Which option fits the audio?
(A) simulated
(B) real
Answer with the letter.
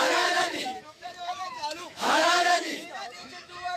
A